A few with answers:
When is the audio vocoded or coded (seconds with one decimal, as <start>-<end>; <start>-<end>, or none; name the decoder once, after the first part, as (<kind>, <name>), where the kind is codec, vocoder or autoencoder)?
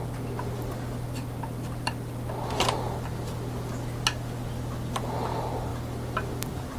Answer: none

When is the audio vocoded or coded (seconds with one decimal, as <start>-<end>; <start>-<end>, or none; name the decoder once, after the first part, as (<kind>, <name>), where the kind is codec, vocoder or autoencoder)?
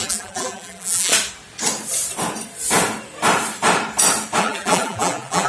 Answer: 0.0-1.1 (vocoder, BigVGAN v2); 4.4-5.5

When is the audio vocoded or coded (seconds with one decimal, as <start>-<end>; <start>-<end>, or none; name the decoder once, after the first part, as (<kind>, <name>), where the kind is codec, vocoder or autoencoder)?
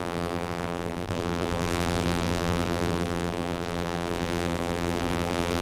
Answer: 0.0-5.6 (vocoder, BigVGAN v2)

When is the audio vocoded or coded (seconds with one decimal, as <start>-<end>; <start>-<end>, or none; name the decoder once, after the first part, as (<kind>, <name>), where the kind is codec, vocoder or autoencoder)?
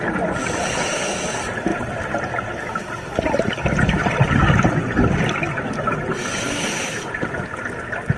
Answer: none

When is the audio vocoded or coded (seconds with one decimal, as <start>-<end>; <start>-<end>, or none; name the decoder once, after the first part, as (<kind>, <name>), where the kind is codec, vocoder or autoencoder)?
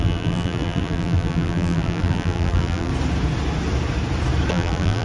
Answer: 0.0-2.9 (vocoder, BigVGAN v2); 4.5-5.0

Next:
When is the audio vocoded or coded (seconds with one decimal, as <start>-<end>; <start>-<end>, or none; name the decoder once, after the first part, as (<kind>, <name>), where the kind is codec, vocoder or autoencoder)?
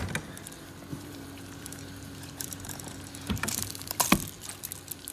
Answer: 0.9-4.0 (vocoder, BigVGAN v2)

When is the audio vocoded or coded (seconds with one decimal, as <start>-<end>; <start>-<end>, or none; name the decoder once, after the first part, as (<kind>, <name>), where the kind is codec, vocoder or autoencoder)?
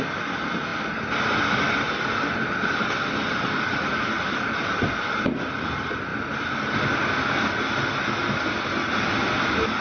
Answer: 6.1-6.7 (vocoder, BigVGAN v2)